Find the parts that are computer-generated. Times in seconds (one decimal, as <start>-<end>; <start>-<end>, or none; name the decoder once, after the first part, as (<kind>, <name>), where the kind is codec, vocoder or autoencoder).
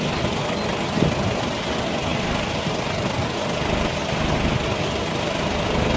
none